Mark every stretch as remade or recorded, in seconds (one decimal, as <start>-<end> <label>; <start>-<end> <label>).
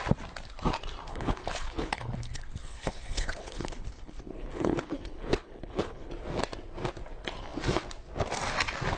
0.0-1.1 recorded; 1.1-6.1 remade; 6.1-9.0 recorded